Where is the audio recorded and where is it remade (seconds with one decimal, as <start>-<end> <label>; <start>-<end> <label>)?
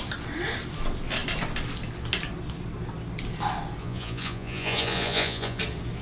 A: 0.0-3.8 recorded; 3.8-5.6 remade; 5.6-6.0 recorded